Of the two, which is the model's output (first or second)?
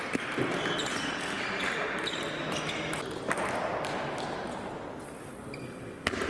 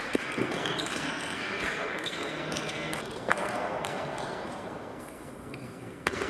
second